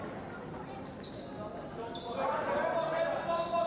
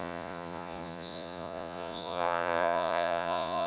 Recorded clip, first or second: first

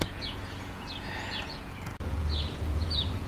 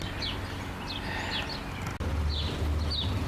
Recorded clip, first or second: second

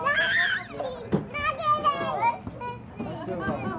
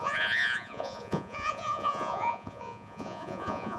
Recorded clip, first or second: first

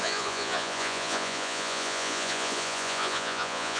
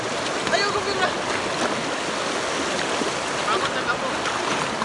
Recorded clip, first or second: second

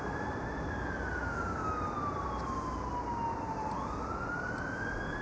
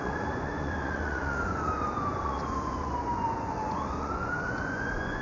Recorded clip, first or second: first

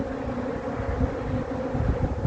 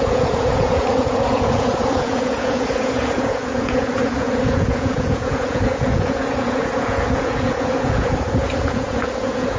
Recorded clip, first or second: first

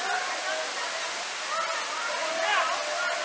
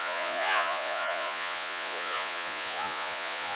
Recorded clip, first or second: first